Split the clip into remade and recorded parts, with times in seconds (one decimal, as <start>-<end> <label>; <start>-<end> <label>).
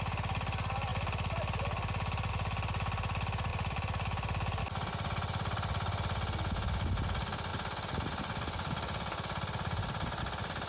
0.0-3.5 recorded; 3.5-4.6 remade; 4.6-10.7 recorded